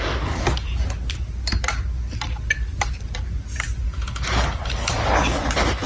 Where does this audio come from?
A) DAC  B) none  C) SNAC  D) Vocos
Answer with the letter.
B